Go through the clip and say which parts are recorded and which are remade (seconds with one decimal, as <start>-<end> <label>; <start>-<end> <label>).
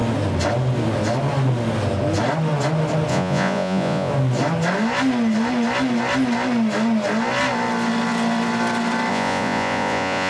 0.0-3.1 recorded; 3.1-4.1 remade; 4.1-9.1 recorded; 9.1-10.3 remade